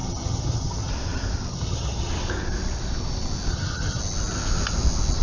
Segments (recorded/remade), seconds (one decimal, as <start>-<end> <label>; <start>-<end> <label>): 0.0-0.9 remade; 0.9-1.5 recorded; 1.5-2.1 remade; 2.1-3.5 recorded; 3.5-4.0 remade; 4.0-5.2 recorded